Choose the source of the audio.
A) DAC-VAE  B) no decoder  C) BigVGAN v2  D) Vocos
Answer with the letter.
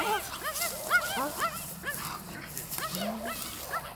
B